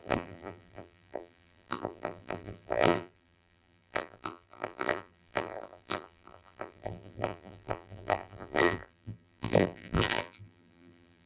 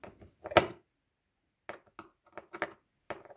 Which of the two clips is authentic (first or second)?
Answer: second